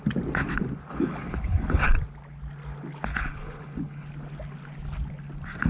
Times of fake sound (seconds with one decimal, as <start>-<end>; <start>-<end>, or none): 0.9-1.9; 3.1-4.1

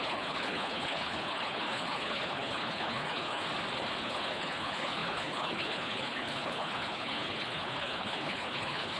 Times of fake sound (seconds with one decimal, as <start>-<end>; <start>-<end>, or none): 0.0-3.4; 4.0-9.0